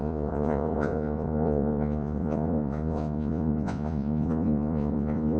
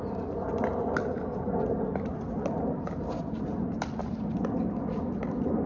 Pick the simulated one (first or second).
first